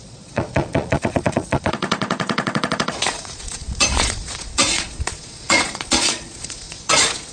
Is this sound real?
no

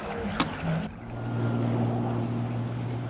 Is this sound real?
yes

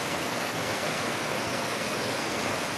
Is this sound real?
no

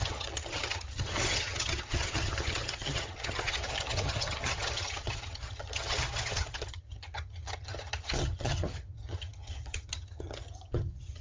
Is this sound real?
no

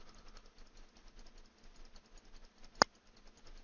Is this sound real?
yes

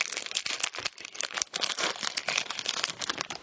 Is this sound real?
yes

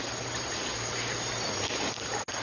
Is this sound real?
yes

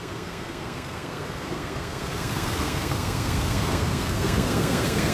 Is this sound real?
no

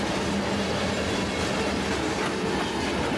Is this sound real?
yes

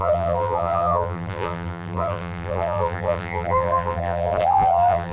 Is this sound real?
no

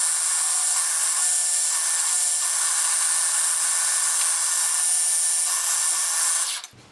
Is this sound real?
yes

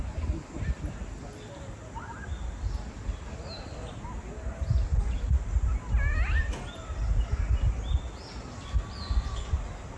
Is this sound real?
yes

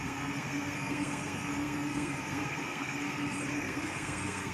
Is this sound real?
no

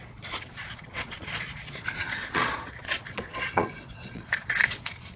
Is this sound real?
no